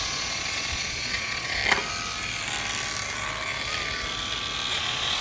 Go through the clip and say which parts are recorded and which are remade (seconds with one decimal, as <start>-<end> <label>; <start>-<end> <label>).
0.0-1.6 remade; 1.6-4.7 recorded; 4.7-5.2 remade